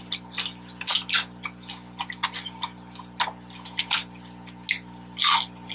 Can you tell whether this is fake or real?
real